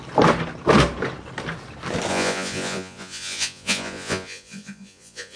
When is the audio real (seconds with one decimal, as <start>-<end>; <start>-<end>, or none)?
0.0-2.1